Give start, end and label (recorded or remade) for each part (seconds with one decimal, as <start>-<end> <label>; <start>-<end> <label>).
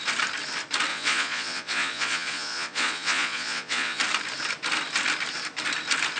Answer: 0.0-0.9 recorded; 0.9-4.0 remade; 4.0-6.2 recorded